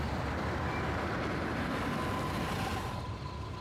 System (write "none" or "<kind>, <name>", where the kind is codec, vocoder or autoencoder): none